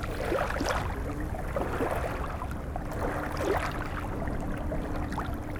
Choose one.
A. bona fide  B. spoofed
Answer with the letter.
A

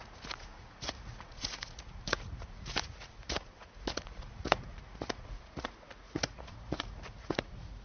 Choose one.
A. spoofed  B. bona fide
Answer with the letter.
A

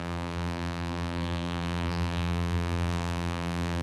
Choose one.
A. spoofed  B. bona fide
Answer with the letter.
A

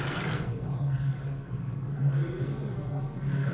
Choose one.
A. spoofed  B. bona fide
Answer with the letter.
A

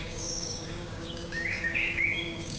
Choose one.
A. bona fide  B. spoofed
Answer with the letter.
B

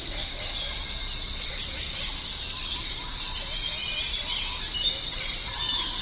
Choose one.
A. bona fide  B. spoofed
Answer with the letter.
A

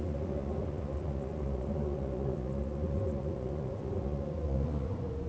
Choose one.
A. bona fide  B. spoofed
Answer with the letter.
B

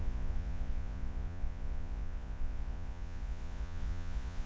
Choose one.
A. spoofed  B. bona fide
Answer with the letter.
A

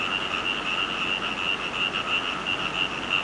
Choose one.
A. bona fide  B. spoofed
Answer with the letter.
A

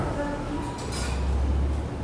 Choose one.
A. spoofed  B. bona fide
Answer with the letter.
B